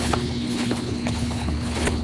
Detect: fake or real fake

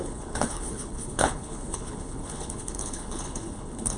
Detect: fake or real fake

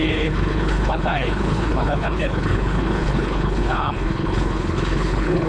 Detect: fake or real fake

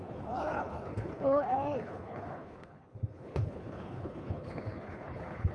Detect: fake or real fake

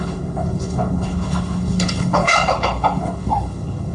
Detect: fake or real fake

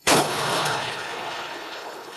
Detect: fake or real fake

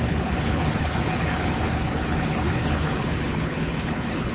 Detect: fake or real fake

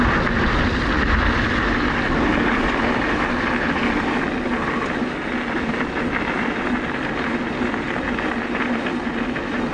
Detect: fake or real real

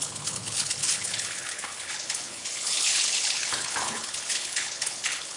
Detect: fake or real fake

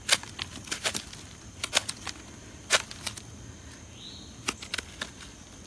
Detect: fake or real real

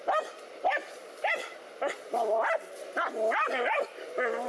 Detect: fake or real real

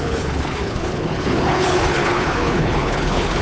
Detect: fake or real fake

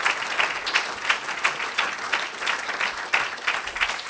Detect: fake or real real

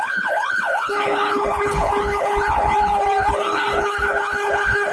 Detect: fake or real fake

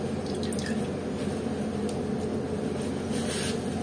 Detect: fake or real real